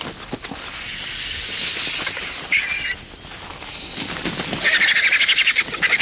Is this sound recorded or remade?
recorded